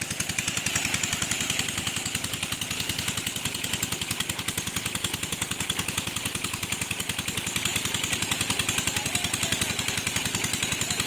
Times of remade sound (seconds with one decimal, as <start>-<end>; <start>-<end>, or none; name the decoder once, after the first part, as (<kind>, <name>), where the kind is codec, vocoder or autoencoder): none